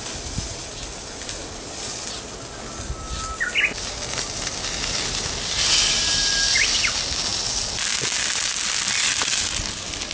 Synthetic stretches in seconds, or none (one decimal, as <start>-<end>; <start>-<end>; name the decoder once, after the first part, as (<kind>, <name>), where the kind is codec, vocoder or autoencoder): none